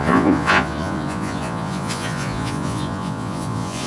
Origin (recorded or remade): remade